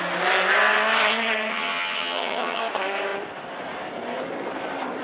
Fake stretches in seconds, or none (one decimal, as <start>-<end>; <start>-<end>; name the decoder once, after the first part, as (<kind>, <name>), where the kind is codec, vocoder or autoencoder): 1.5-2.6 (vocoder, HiFi-GAN)

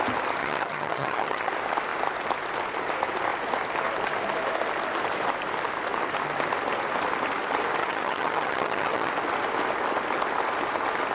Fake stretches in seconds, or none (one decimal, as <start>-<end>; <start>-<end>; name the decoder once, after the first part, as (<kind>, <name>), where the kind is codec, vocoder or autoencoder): 0.4-1.5 (vocoder, HiFi-GAN); 7.8-9.1

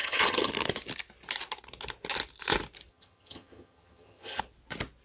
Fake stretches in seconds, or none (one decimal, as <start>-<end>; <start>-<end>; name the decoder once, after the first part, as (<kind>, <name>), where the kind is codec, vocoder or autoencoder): 0.0-0.5 (vocoder, HiFi-GAN); 2.9-4.4

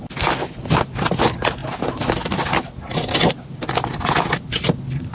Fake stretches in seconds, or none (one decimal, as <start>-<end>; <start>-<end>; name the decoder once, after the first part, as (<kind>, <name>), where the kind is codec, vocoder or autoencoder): none

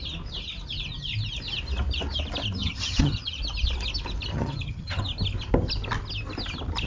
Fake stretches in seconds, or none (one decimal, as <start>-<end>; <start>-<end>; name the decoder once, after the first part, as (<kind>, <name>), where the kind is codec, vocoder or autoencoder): 2.6-3.4 (vocoder, HiFi-GAN); 4.3-5.0

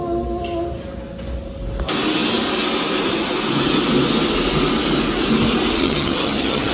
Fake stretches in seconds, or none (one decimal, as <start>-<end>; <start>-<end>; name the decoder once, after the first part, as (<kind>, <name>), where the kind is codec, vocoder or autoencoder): 5.8-6.7 (vocoder, HiFi-GAN)

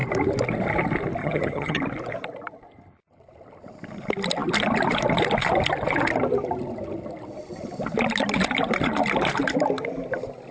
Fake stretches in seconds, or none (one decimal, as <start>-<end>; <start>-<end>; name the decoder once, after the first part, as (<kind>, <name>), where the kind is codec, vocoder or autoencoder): 1.2-1.8 (vocoder, HiFi-GAN)